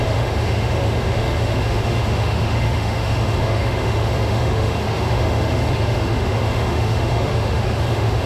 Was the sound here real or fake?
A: fake